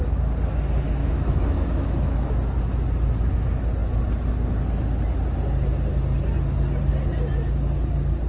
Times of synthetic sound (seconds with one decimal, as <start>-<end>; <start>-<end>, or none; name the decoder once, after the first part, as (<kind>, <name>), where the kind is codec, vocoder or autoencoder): 1.0-2.4 (autoencoder, DAC-VAE)